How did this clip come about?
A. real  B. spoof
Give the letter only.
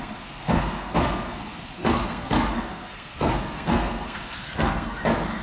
B